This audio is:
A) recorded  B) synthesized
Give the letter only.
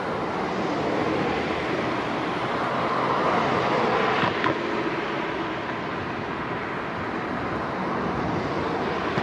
A